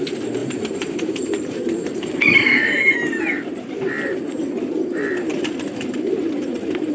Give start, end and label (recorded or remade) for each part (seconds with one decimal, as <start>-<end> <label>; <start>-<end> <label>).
0.0-0.4 recorded; 0.4-3.4 remade; 3.4-6.9 recorded